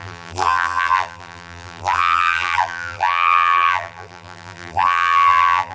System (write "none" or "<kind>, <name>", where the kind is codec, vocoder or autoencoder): vocoder, BigVGAN v2